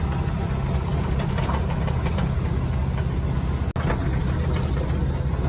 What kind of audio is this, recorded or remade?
recorded